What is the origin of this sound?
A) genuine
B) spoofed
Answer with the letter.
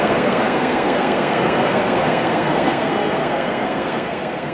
B